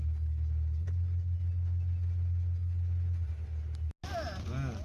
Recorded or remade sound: recorded